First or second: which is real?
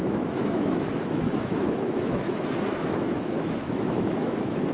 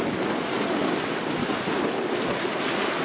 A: second